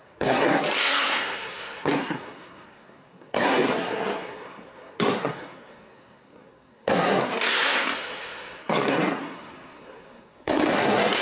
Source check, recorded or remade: remade